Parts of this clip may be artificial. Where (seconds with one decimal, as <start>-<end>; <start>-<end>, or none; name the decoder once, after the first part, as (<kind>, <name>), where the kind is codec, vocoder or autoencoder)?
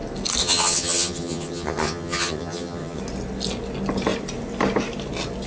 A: 0.4-3.0 (vocoder, HiFi-GAN)